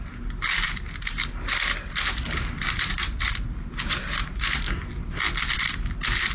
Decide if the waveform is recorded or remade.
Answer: recorded